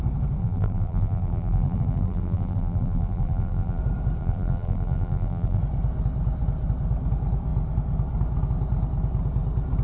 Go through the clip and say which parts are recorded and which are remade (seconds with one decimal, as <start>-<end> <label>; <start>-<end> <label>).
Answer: 0.0-0.4 recorded; 0.4-3.8 remade; 3.8-4.2 recorded; 4.2-5.6 remade; 5.6-9.8 recorded